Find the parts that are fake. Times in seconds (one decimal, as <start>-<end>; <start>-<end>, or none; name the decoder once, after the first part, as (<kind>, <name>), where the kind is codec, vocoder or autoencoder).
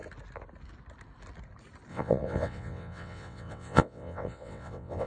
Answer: 1.9-5.1 (vocoder, WaveNeXt)